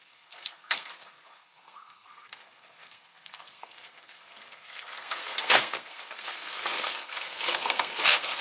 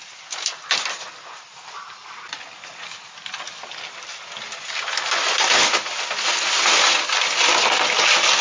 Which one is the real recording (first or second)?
second